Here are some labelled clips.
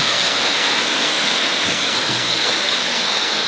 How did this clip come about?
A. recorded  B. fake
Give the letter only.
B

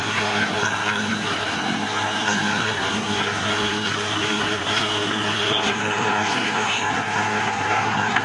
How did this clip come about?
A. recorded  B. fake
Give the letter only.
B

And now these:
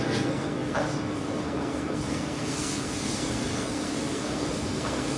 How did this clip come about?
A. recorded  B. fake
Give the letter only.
B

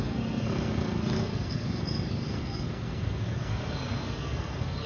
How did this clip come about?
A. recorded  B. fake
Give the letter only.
B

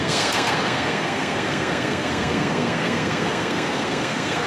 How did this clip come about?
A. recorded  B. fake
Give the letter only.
B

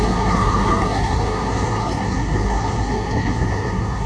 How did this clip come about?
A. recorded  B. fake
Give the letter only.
B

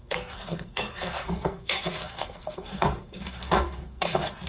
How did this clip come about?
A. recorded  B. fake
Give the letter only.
B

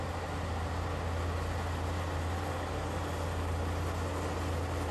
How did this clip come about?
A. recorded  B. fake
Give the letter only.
A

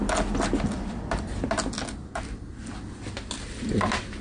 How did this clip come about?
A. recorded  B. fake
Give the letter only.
A